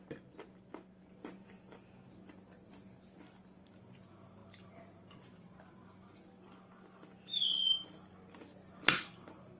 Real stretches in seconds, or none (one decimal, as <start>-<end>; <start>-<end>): 0.0-9.6